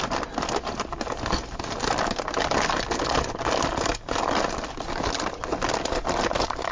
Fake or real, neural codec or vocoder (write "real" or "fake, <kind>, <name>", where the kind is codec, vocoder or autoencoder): real